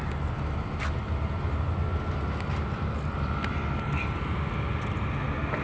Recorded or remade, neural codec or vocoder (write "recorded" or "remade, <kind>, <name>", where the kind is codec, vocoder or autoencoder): recorded